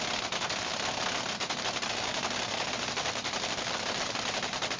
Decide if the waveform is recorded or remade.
recorded